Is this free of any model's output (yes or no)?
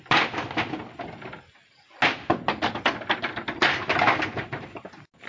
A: yes